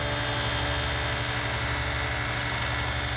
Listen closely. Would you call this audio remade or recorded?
recorded